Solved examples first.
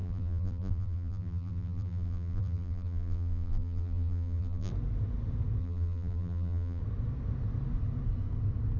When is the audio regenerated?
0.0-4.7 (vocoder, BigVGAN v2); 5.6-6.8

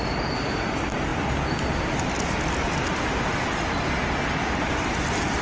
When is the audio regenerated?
none

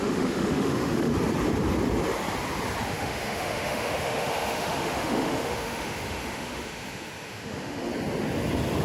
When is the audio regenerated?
0.0-1.1 (autoencoder, DAC-VAE); 2.9-7.9

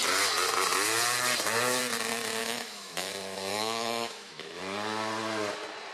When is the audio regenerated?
2.4-3.1 (autoencoder, DAC-VAE); 3.5-4.6

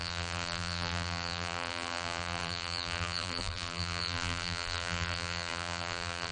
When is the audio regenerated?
0.0-6.3 (vocoder, BigVGAN v2)